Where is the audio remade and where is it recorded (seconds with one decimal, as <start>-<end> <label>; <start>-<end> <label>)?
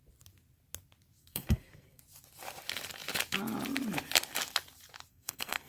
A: 0.0-1.2 recorded; 1.2-2.0 remade; 2.0-5.1 recorded; 5.1-5.7 remade